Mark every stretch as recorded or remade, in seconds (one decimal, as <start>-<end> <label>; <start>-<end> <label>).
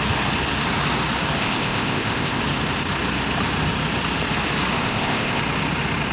0.0-1.4 recorded; 1.4-2.4 remade; 2.4-4.8 recorded; 4.8-5.4 remade; 5.4-6.1 recorded